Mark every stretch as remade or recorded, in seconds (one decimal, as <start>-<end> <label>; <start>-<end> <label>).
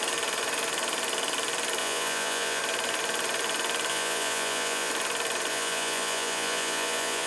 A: 0.0-1.8 recorded; 1.8-2.6 remade; 2.6-3.9 recorded; 3.9-4.9 remade; 4.9-5.5 recorded; 5.5-7.3 remade